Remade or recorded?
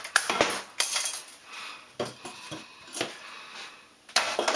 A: recorded